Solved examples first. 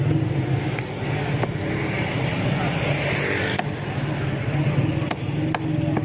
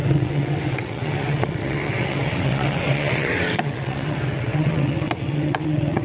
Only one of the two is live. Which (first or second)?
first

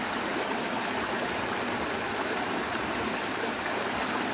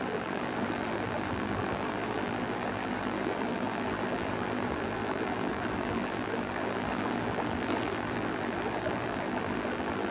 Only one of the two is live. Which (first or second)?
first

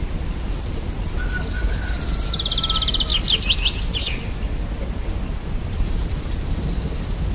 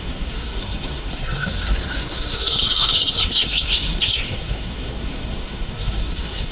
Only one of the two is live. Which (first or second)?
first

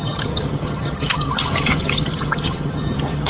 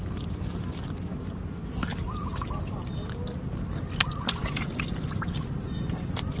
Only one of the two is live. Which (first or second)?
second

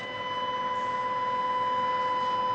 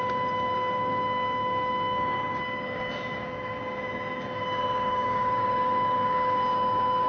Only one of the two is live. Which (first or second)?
first